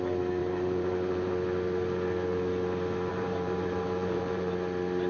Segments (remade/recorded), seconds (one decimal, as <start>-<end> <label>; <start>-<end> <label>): 0.0-0.4 recorded; 0.4-1.3 remade; 1.3-3.1 recorded; 3.1-4.5 remade; 4.5-5.1 recorded